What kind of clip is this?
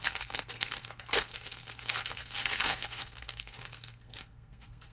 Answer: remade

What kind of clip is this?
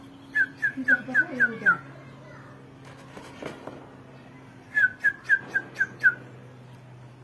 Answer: recorded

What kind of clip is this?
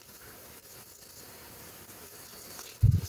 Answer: recorded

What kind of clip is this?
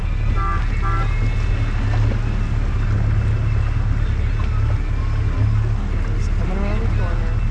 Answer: recorded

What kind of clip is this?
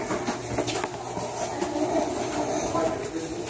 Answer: recorded